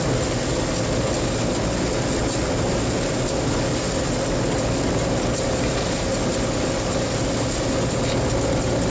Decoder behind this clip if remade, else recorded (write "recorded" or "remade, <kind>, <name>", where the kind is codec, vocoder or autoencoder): recorded